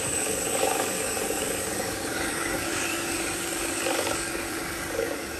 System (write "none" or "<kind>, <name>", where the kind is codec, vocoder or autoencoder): codec, DAC